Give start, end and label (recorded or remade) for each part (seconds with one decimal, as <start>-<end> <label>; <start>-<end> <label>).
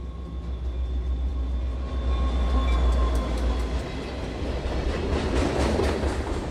0.0-6.5 recorded